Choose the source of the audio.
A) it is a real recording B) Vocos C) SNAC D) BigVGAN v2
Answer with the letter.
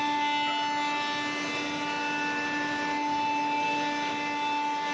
A